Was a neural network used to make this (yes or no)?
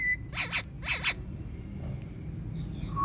no